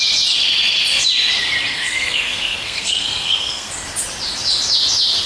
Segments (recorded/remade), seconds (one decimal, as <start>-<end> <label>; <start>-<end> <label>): 0.0-1.7 recorded; 1.7-3.7 remade; 3.7-5.3 recorded